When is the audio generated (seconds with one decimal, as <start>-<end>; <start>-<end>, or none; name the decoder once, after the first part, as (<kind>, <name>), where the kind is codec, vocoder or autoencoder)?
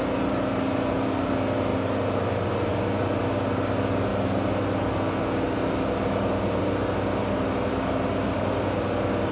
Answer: none